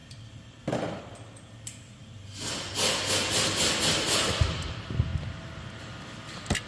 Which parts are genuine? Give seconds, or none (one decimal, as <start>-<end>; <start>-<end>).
1.0-2.0; 3.0-6.7

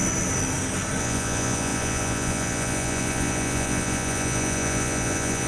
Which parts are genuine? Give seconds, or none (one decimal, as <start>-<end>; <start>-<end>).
0.0-1.0

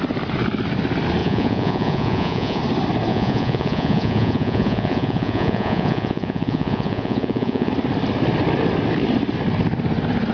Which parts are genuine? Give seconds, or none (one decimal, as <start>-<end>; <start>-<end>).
0.0-1.2; 2.6-3.1; 7.7-10.3

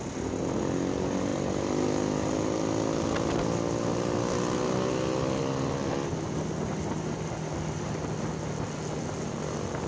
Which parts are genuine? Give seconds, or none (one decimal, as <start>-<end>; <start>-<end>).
0.0-9.9

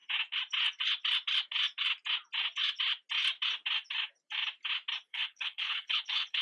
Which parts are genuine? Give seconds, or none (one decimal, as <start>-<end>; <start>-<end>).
0.0-5.1